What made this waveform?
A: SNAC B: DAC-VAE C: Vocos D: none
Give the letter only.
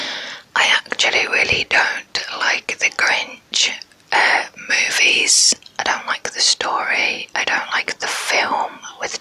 D